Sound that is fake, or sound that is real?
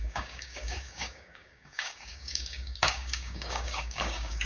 fake